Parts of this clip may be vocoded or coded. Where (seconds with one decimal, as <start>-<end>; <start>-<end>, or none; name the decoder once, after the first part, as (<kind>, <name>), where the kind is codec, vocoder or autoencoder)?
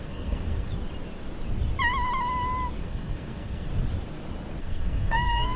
0.0-0.7 (codec, SNAC); 2.8-3.7; 4.6-5.6